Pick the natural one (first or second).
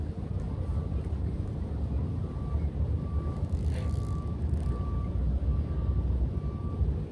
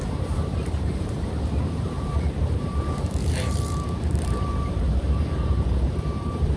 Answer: first